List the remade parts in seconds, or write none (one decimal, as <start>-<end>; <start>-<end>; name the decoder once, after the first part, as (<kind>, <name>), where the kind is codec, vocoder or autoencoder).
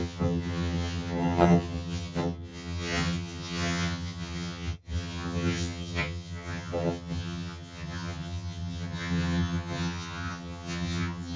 0.0-11.4 (vocoder, HiFi-GAN)